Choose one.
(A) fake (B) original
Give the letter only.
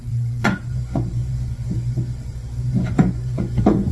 A